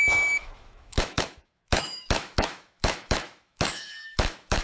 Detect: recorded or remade remade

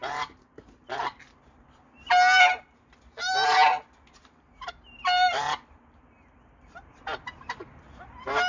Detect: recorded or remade recorded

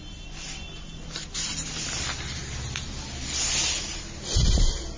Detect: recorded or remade recorded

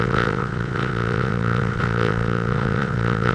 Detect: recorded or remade remade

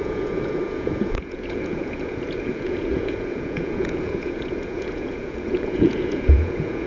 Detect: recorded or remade remade